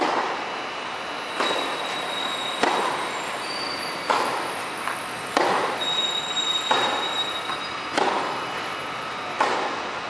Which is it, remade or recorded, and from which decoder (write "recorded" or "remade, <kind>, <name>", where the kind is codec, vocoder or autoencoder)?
remade, vocoder, BigVGAN v2